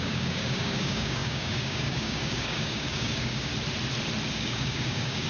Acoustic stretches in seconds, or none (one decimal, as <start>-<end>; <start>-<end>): 3.5-4.3